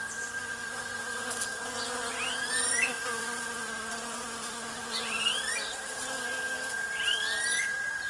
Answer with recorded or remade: recorded